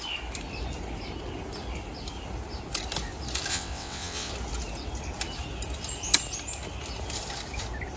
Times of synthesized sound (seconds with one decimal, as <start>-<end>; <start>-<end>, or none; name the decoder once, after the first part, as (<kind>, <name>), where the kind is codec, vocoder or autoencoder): 3.5-4.3 (vocoder, WaveNeXt)